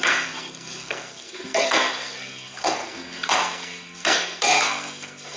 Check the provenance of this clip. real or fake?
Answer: fake